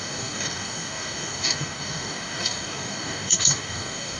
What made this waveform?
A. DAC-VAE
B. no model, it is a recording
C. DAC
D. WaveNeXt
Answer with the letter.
C